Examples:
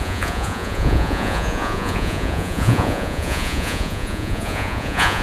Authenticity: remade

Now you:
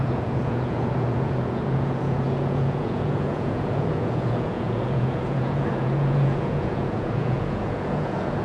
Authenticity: remade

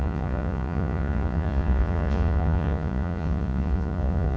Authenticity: remade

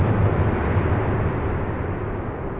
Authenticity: recorded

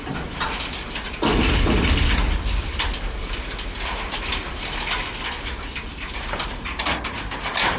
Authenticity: recorded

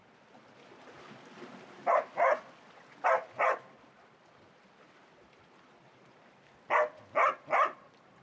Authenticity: recorded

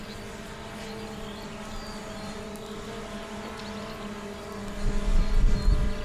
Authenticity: recorded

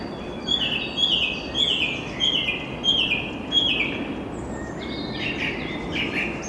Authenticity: recorded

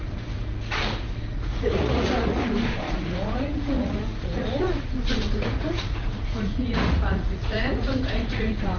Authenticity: remade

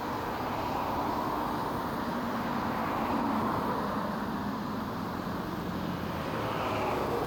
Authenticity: recorded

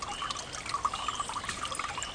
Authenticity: recorded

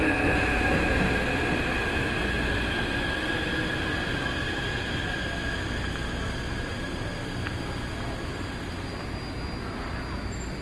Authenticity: recorded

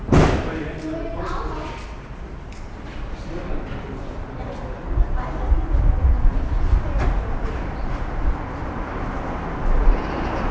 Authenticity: recorded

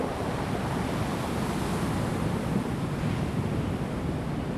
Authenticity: recorded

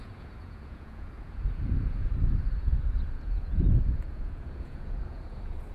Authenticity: remade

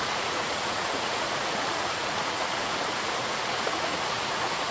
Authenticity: remade